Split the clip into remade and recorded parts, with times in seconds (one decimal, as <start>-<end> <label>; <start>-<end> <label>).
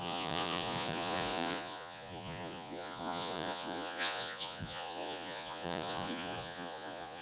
0.0-7.2 remade